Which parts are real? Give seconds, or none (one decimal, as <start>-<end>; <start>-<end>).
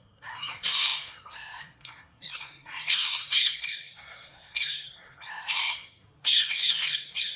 none